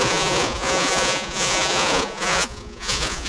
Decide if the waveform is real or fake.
fake